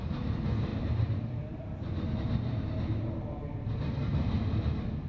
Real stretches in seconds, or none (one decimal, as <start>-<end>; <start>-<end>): 0.0-0.7; 1.8-5.1